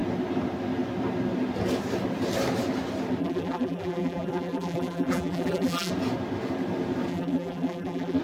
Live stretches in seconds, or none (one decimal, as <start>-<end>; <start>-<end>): 0.0-3.2; 5.9-7.1